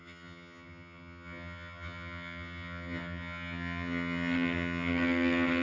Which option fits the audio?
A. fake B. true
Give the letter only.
A